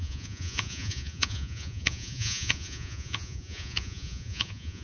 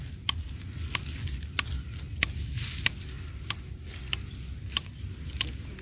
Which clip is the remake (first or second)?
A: first